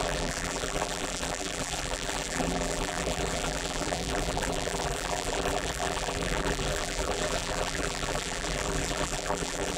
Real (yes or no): no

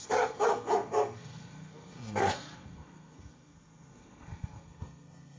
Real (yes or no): no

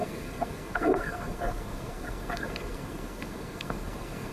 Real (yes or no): no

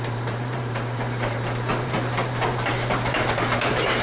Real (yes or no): no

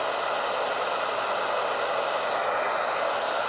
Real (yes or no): yes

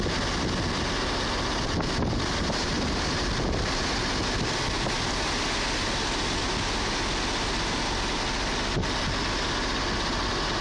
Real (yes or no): yes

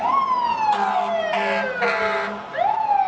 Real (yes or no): yes